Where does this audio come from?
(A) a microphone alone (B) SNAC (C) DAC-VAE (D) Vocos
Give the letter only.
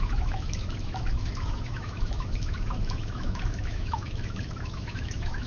C